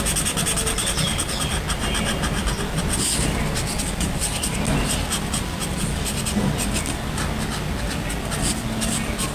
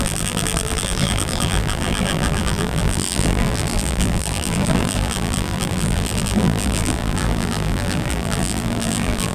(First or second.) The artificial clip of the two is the second